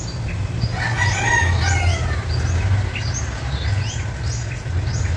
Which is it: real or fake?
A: real